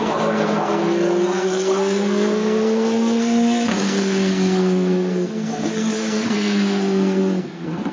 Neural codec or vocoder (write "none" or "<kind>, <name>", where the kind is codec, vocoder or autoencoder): codec, SNAC